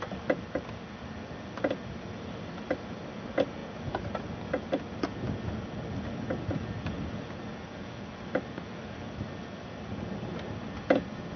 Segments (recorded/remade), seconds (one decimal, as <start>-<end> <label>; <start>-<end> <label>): 0.0-11.4 recorded